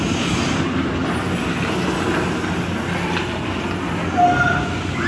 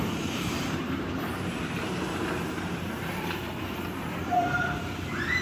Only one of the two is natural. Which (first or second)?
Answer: first